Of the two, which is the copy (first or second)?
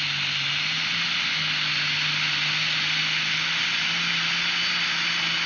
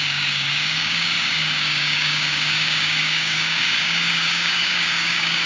second